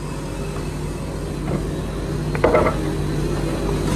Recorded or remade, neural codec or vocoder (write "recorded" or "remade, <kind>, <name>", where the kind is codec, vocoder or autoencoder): recorded